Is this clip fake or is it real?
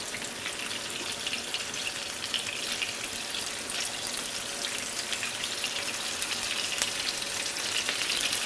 real